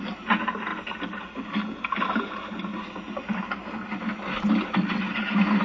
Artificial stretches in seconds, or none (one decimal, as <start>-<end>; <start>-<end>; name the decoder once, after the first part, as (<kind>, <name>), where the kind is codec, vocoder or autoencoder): none

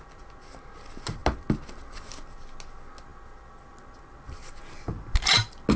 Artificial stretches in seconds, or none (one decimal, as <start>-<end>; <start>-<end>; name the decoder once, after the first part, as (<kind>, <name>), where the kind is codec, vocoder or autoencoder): none

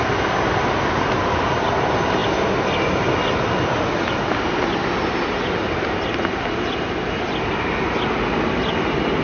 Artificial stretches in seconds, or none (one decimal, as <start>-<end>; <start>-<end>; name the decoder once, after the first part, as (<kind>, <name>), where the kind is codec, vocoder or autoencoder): none